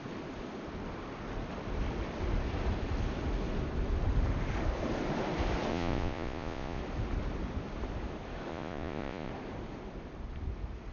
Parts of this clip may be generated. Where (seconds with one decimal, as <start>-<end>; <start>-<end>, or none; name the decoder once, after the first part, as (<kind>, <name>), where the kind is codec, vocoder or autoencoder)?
5.7-6.8 (vocoder, Vocos); 8.5-9.3